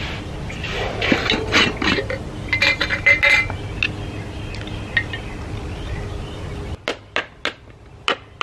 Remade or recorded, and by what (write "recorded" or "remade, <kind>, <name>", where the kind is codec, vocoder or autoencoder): recorded